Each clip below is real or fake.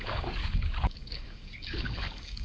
fake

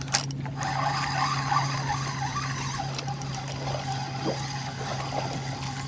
real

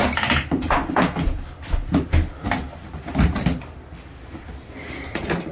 real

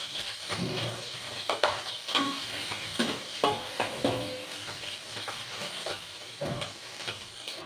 fake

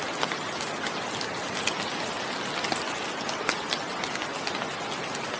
real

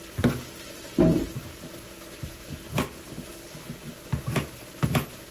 real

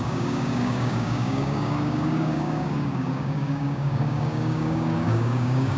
fake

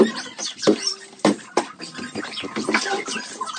fake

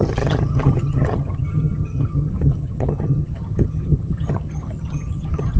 fake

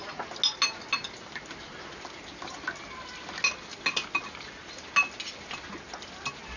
real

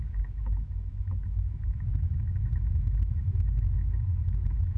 fake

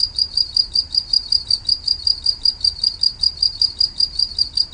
fake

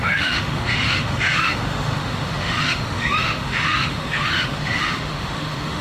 fake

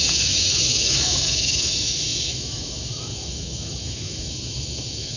fake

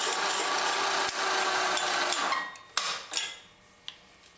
real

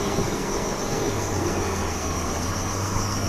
fake